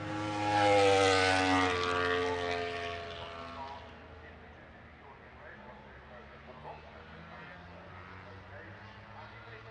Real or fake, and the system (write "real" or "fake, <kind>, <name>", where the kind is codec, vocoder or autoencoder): real